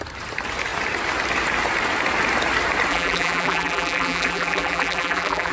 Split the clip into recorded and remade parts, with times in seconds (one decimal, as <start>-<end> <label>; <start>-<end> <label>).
0.0-2.9 recorded; 2.9-5.5 remade